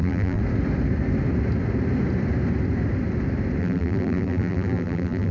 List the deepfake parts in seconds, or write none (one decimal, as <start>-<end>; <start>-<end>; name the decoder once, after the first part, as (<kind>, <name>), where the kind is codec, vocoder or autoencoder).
0.0-0.4 (vocoder, BigVGAN v2); 3.6-5.3